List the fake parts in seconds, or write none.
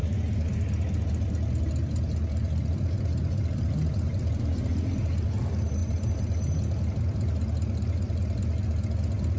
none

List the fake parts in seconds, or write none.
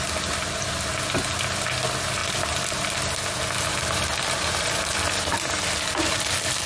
none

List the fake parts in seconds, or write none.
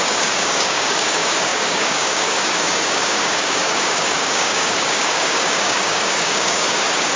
0.0-7.2 (codec, DAC)